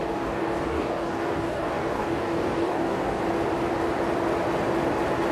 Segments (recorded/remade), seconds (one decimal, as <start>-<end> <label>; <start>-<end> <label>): 0.0-3.2 remade; 3.2-5.3 recorded